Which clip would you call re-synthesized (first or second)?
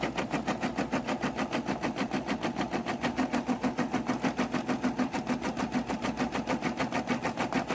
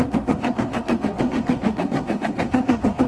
second